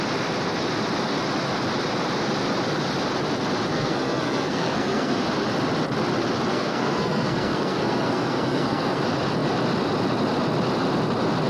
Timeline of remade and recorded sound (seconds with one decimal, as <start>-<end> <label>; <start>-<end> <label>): 0.0-3.7 recorded; 3.7-5.2 remade; 5.2-6.5 recorded; 6.5-9.0 remade; 9.0-11.5 recorded